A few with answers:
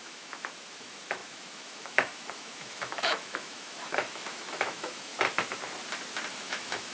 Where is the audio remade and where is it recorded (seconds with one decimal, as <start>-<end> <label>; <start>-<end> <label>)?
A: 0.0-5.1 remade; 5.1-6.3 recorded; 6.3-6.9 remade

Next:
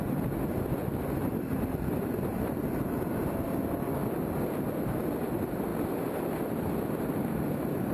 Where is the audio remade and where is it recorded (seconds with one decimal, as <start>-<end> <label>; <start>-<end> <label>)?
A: 0.0-7.9 recorded

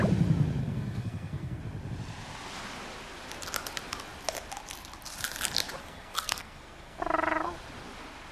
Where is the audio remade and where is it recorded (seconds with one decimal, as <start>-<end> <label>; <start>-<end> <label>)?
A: 0.0-0.6 recorded; 0.6-1.6 remade; 1.6-5.8 recorded; 5.8-7.0 remade; 7.0-8.3 recorded

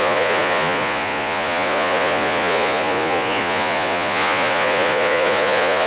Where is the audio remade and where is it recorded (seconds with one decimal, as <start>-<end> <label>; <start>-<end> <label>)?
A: 0.0-5.9 remade

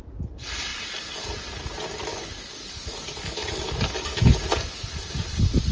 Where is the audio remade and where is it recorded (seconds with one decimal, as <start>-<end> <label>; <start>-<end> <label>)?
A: 0.0-2.1 recorded; 2.1-4.2 remade; 4.2-5.7 recorded